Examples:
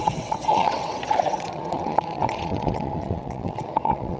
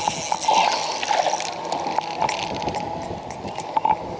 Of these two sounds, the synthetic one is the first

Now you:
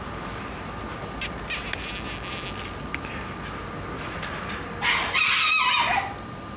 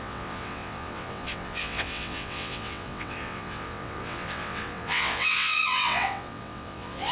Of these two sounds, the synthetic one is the second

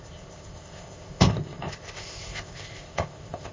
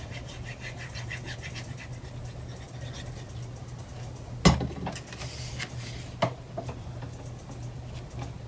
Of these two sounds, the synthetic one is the first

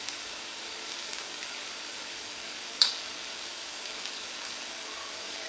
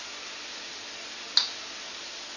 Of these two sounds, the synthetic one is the first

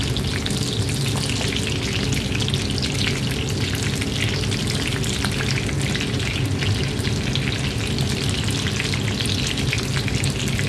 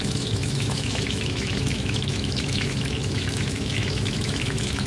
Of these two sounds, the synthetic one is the second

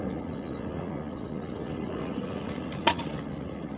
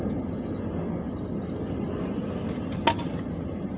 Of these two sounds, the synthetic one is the first